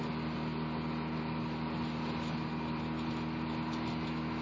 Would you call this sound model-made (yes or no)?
no